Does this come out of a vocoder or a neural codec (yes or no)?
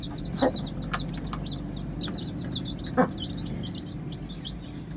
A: no